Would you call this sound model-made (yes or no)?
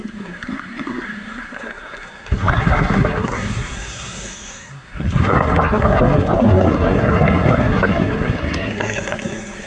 yes